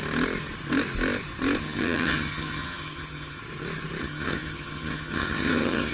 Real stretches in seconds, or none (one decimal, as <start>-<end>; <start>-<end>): 0.0-1.6; 3.4-4.0